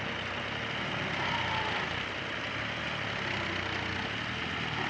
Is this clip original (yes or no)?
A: yes